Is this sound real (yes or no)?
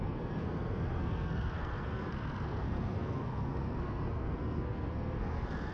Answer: no